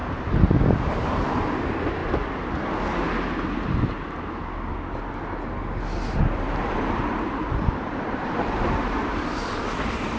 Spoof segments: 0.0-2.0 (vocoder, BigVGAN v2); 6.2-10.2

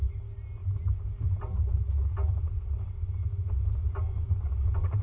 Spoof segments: none

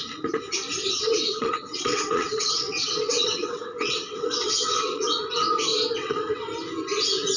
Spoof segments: 0.8-5.2 (vocoder, WaveNeXt); 5.7-6.5